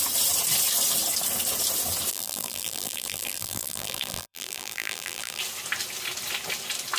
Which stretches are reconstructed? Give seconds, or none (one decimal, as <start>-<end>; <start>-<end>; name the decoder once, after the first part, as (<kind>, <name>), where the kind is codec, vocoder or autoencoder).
2.1-5.4 (vocoder, BigVGAN v2)